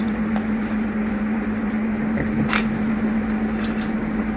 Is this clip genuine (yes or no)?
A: yes